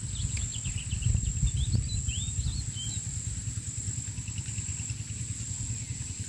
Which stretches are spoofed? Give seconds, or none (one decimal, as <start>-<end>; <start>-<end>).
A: none